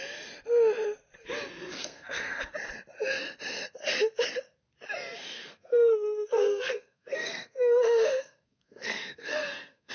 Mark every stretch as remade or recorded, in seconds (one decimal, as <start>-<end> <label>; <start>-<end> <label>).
0.0-1.8 recorded; 1.8-2.4 remade; 2.4-5.2 recorded; 5.2-9.9 remade